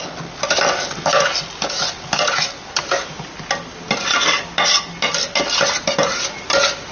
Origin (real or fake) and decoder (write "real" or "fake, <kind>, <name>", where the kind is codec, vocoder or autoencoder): real